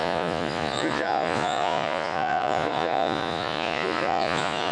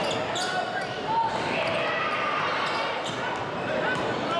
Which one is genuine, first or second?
second